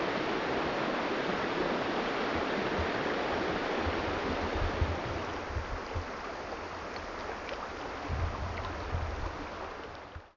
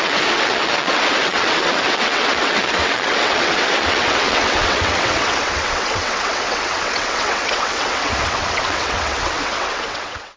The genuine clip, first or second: first